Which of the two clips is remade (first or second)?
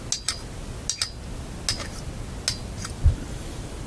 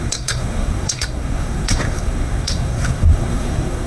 second